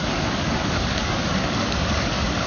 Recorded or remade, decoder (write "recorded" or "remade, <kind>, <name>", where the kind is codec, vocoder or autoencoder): remade, codec, DAC